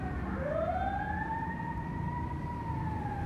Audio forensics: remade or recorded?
recorded